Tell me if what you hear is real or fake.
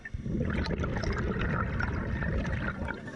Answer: real